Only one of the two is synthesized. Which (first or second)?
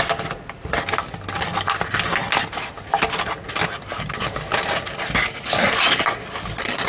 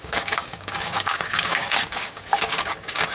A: second